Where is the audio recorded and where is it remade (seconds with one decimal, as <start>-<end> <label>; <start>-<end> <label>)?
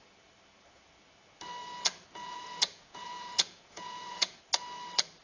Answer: 0.0-2.2 recorded; 2.2-4.4 remade; 4.4-5.2 recorded